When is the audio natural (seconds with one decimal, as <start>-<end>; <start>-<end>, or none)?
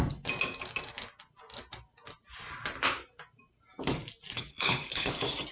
0.0-4.5; 5.1-5.5